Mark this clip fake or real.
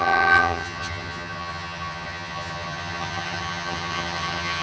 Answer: fake